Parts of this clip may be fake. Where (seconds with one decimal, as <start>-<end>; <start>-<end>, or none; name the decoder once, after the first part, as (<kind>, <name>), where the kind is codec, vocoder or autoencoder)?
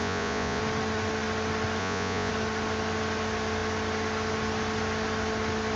0.0-0.6 (vocoder, Vocos); 1.8-2.3